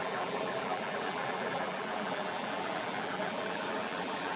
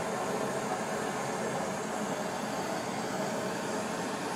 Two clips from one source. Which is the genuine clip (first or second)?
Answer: second